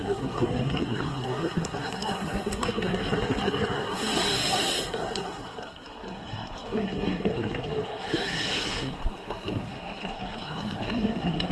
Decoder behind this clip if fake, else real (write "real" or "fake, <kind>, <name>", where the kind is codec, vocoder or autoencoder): fake, codec, SNAC